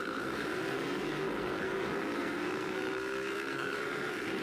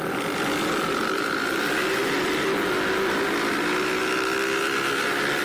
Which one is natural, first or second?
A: second